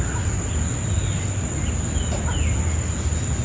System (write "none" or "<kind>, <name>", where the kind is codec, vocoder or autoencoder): none